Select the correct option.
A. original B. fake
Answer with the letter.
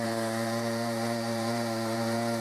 B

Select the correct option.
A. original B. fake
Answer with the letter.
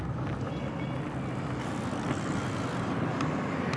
A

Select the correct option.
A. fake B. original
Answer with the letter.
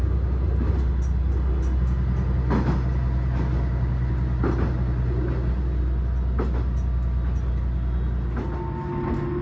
B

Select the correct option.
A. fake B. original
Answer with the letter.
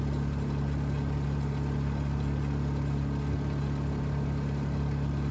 B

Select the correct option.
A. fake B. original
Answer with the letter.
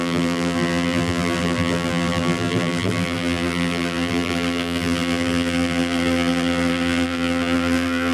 A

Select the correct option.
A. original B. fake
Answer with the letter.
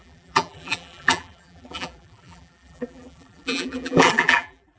B